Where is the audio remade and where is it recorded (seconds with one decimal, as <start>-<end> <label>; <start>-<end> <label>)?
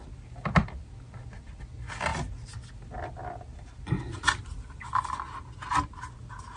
0.0-6.6 recorded